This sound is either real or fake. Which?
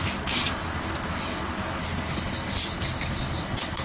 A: real